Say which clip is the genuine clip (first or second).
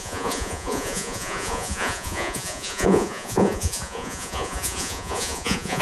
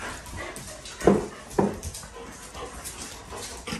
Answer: second